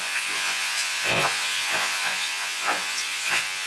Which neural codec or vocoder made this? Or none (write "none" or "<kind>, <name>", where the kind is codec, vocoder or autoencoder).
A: vocoder, Vocos